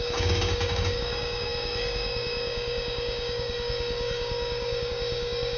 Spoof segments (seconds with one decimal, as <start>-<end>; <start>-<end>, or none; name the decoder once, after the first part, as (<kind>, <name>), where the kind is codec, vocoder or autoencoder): 0.0-5.6 (codec, DAC)